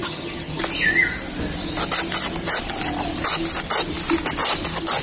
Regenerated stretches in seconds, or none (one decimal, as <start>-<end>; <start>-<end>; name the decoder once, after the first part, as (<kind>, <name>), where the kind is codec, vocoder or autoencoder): 0.0-0.6 (vocoder, HiFi-GAN)